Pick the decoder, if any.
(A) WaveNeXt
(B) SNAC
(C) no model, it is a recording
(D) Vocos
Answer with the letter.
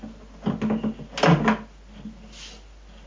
C